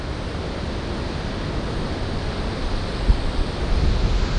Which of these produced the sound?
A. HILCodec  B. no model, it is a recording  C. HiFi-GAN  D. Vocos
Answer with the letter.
B